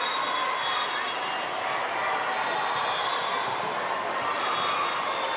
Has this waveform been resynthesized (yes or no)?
no